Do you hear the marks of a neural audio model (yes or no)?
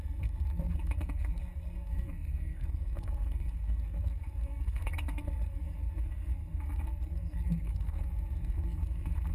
yes